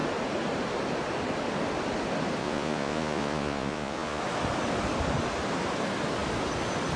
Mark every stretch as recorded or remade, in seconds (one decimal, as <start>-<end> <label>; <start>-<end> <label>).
0.0-2.4 recorded; 2.4-4.2 remade; 4.2-7.0 recorded